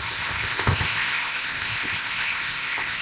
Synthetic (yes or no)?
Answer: yes